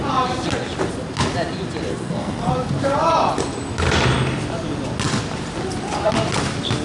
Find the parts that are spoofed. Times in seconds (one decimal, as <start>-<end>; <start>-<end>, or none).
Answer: 1.9-2.5